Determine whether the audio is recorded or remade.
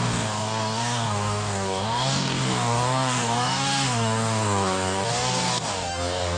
remade